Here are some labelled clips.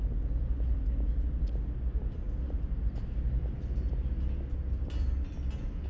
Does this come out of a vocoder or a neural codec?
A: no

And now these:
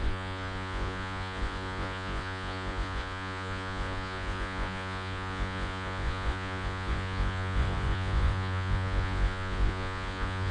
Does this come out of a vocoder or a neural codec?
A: yes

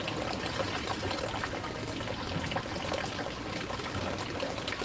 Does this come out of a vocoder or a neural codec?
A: no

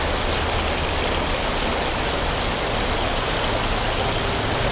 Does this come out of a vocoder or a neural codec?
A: no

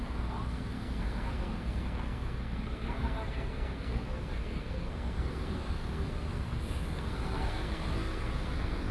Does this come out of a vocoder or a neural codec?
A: yes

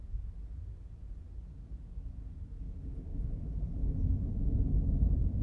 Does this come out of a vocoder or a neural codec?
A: no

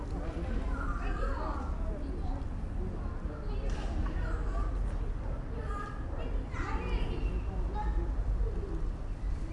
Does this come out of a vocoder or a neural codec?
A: no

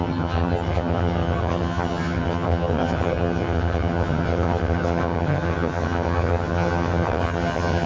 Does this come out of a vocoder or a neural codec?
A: yes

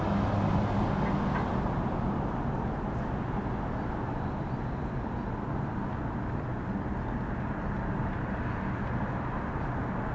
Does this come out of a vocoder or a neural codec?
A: no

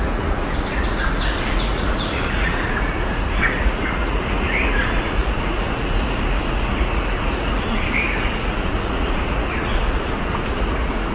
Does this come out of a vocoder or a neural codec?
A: yes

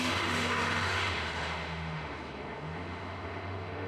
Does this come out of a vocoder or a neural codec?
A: yes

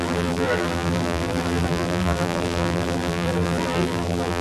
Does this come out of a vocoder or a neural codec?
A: yes